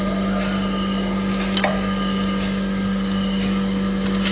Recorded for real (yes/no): yes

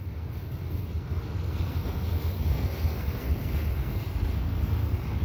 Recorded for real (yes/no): no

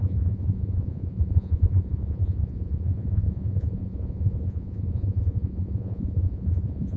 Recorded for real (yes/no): no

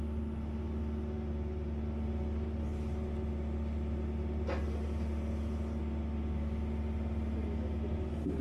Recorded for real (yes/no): yes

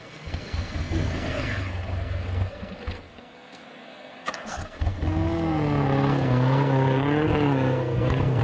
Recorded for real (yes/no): no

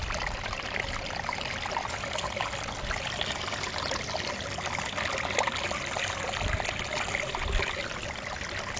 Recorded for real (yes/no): yes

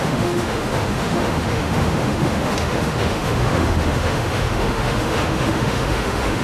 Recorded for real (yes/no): no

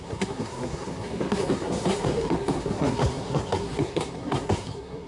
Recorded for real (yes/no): no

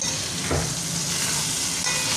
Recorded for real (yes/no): yes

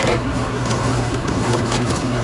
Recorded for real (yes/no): no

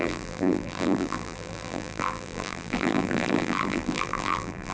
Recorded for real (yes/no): no